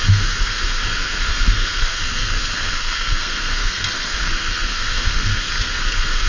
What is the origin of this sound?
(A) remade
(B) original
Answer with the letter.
A